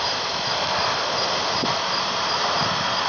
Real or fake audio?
real